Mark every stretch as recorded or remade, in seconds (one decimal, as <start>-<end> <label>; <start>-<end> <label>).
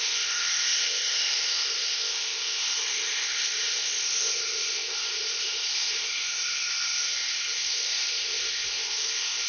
0.0-9.5 remade